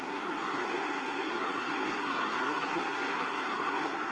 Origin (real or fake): fake